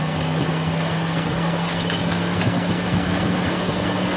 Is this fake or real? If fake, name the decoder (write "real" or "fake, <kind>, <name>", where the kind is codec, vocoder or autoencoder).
fake, codec, SNAC